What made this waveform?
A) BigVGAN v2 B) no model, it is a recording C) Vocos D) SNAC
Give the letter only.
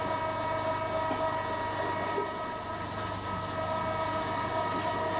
B